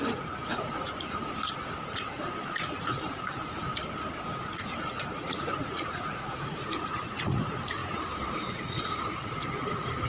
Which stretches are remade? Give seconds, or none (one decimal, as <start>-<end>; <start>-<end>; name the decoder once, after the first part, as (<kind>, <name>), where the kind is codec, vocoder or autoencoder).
0.0-3.7 (vocoder, Vocos); 4.4-7.8; 8.3-10.1